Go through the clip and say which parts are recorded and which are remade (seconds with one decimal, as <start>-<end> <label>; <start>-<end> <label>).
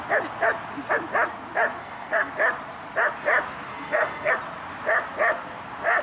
0.0-1.8 recorded; 1.8-2.3 remade; 2.3-3.7 recorded; 3.7-4.3 remade; 4.3-6.0 recorded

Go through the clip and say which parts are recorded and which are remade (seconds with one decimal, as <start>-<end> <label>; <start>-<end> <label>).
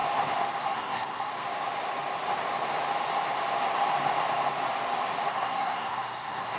0.0-0.6 recorded; 0.6-1.3 remade; 1.3-5.3 recorded; 5.3-6.6 remade